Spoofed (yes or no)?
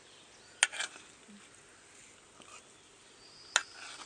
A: no